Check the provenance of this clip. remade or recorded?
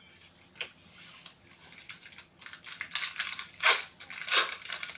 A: recorded